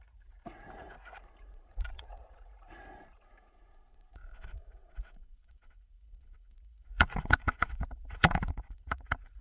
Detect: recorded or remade remade